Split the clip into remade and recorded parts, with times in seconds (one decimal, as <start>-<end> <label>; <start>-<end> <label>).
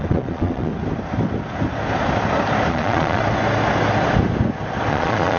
0.0-0.7 remade; 0.7-2.7 recorded; 2.7-3.2 remade; 3.2-4.9 recorded; 4.9-5.4 remade